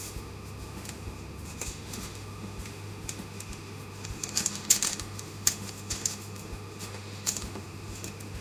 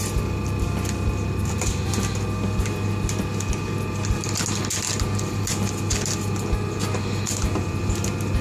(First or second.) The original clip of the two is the second